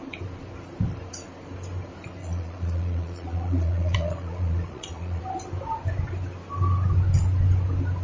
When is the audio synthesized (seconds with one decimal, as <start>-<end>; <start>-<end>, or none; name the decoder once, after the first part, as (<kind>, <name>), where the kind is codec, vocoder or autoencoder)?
2.2-5.2 (vocoder, Vocos)